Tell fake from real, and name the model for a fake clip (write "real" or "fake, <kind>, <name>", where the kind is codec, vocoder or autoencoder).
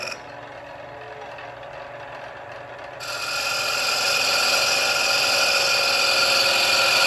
real